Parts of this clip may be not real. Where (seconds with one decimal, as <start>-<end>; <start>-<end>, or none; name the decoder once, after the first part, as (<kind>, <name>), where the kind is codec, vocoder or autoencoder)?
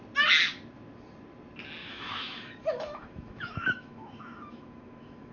1.8-5.3 (autoencoder, DAC-VAE)